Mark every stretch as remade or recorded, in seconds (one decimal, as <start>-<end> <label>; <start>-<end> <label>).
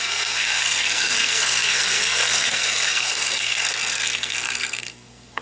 0.0-5.4 remade